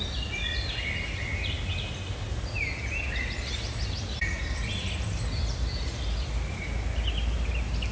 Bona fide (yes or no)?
yes